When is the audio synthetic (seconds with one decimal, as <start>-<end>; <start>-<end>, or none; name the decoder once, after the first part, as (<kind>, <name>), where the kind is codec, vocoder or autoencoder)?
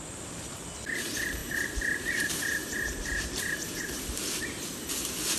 1.4-4.0 (vocoder, BigVGAN v2)